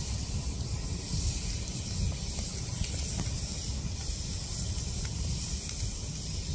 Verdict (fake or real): real